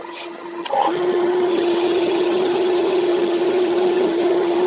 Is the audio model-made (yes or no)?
yes